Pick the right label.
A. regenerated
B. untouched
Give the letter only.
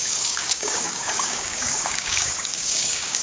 A